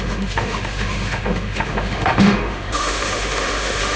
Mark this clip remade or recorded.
remade